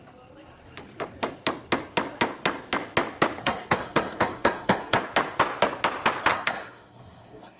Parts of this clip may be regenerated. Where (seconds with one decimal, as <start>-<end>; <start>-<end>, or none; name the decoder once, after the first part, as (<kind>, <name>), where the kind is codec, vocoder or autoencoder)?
3.4-5.0 (codec, SNAC); 6.3-7.6